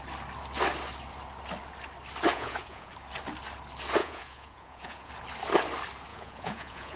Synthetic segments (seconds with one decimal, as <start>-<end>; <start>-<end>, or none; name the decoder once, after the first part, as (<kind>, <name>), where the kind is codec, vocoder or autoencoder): 2.3-2.9 (vocoder, Vocos); 4.0-5.1; 6.1-7.0